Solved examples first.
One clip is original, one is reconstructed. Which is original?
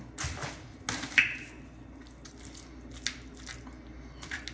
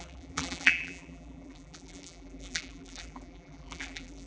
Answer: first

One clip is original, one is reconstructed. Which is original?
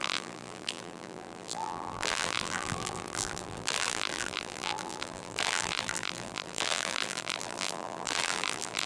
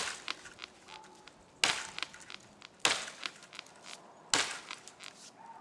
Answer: second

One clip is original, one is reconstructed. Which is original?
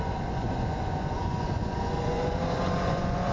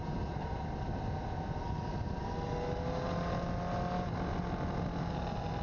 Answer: second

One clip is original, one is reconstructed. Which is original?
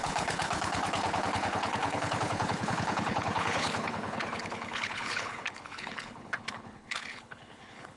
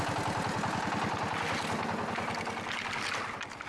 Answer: second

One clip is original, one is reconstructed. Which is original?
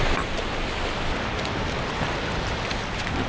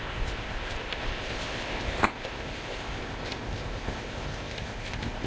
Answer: first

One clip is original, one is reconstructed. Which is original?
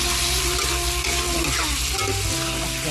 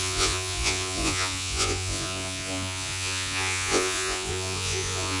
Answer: first